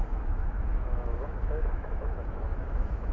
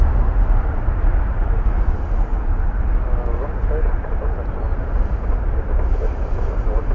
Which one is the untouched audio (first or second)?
second